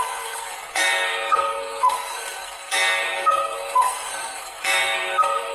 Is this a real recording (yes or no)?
no